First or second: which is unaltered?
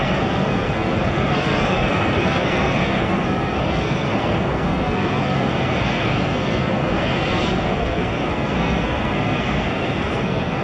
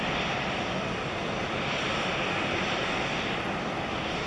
second